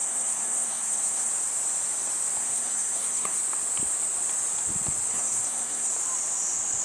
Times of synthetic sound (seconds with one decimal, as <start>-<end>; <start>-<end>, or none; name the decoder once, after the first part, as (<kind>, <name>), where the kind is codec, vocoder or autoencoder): 0.0-1.3 (codec, SNAC); 2.4-3.4; 5.1-5.9